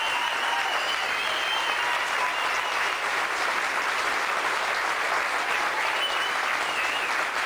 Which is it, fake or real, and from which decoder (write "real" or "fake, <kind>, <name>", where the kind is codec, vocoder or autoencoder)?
real